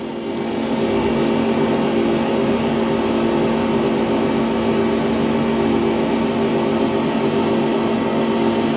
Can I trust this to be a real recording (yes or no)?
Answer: yes